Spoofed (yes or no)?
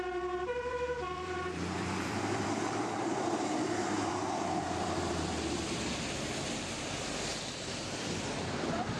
yes